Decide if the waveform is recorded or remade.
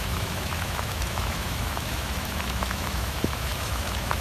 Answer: remade